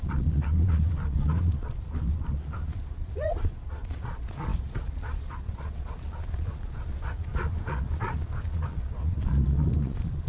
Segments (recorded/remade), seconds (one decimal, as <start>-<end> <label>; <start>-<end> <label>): 0.0-10.3 remade